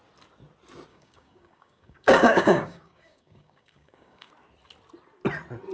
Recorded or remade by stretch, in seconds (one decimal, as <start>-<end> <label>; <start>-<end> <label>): 0.0-0.9 recorded; 0.9-4.3 remade; 4.3-5.7 recorded